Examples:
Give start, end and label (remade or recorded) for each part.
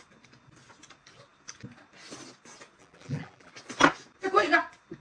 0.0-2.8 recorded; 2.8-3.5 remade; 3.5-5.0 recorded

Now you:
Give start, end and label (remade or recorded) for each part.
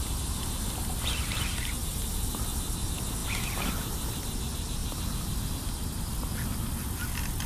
0.0-7.5 recorded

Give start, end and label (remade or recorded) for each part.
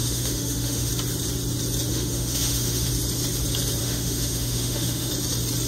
0.0-0.9 remade; 0.9-1.9 recorded; 1.9-2.9 remade; 2.9-3.8 recorded; 3.8-5.1 remade; 5.1-5.7 recorded